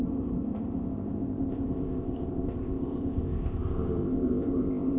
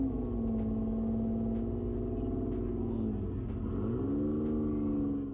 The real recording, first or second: second